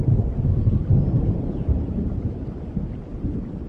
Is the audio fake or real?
real